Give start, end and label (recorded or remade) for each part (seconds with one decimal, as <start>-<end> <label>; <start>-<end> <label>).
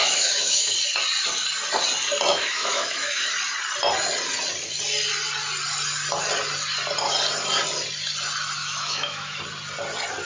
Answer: 0.0-0.7 remade; 0.7-2.3 recorded; 2.3-3.3 remade; 3.3-8.6 recorded; 8.6-9.4 remade; 9.4-10.3 recorded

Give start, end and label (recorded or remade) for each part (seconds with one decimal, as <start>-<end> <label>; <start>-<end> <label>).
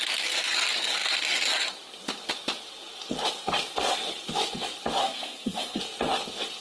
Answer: 0.0-5.0 recorded; 5.0-5.8 remade; 5.8-6.6 recorded